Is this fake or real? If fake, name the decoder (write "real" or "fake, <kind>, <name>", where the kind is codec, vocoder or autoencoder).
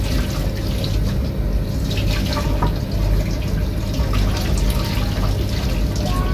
real